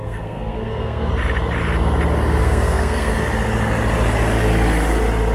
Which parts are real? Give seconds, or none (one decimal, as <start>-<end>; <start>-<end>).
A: 1.1-2.4; 3.1-5.3